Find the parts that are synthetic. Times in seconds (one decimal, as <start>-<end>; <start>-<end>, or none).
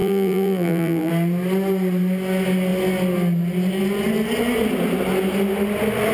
0.0-1.1